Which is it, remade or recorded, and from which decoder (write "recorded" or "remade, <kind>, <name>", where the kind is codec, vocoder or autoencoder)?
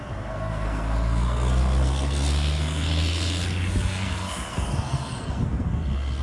remade, codec, SNAC